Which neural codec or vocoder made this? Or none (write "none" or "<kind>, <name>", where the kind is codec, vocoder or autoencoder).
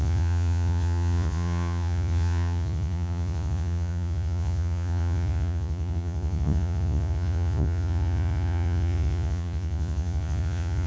vocoder, Vocos